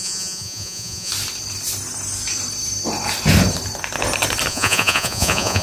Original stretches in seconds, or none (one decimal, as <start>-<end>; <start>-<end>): 1.1-4.5